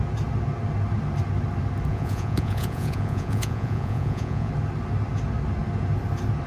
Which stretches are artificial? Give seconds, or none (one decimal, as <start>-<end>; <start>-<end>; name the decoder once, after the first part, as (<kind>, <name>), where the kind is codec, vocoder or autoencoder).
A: 1.9-4.5 (vocoder, Vocos)